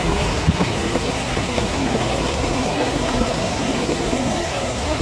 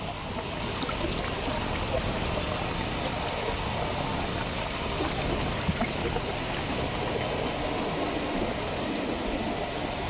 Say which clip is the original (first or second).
second